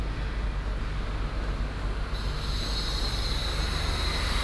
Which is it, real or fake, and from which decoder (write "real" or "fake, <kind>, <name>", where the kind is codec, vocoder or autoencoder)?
real